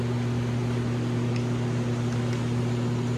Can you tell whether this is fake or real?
real